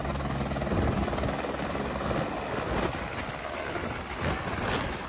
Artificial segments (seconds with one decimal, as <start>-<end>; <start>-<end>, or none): none

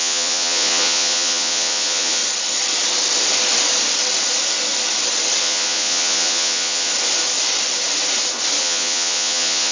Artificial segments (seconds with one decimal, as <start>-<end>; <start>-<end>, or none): 0.0-2.2; 5.4-6.9; 8.6-9.7

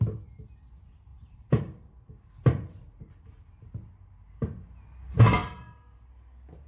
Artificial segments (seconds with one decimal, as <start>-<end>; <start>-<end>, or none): 1.1-3.3; 5.4-6.1

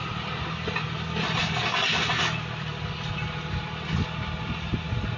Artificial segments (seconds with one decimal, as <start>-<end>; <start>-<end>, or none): none

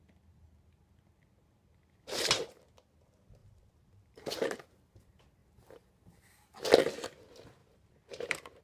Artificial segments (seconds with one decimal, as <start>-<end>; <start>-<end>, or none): 3.4-4.9; 7.6-8.6